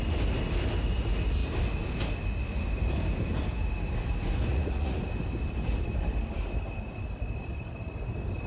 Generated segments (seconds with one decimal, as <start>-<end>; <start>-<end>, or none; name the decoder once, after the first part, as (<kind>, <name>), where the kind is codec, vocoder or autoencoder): 4.5-5.0 (vocoder, Vocos)